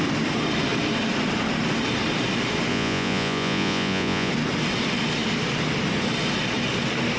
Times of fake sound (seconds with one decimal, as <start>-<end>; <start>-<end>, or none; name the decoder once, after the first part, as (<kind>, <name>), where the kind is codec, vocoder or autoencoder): 2.7-4.3 (vocoder, Vocos)